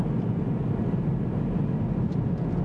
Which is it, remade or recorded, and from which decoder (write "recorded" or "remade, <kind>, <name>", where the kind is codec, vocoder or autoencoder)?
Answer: recorded